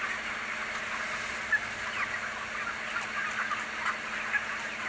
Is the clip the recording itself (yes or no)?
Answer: yes